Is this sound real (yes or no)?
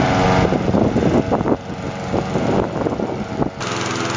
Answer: yes